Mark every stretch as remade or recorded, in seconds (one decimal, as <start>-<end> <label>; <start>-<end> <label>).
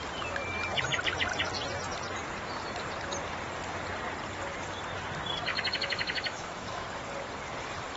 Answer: 0.0-5.5 recorded; 5.5-6.8 remade; 6.8-8.0 recorded